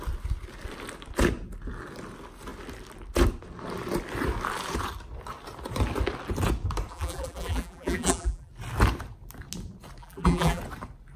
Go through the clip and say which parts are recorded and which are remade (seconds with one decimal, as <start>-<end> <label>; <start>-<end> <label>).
0.0-6.9 recorded; 6.9-8.5 remade; 8.5-10.0 recorded; 10.0-10.6 remade; 10.6-11.2 recorded